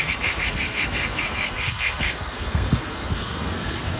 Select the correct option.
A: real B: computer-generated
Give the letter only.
B